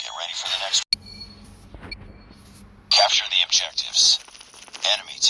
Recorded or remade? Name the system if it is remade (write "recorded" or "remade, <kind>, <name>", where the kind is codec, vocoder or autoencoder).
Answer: recorded